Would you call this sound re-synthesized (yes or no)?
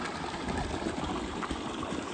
yes